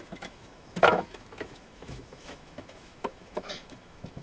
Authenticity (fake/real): fake